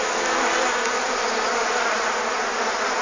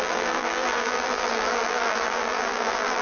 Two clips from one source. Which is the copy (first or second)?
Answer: second